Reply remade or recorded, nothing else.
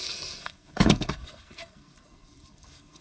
remade